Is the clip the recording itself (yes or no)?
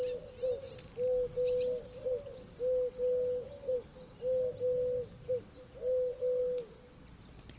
yes